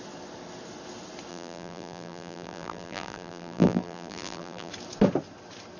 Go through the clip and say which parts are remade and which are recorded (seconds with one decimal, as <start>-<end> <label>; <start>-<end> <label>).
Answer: 0.0-1.3 recorded; 1.3-4.7 remade; 4.7-5.8 recorded